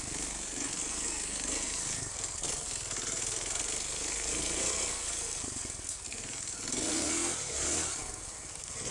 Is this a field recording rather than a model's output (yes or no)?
no